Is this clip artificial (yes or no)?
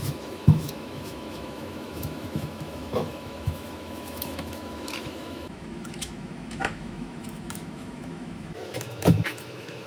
yes